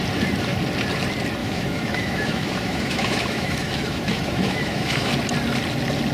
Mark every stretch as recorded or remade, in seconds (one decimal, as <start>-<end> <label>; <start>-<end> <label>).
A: 0.0-1.4 recorded; 1.4-5.1 remade; 5.1-6.1 recorded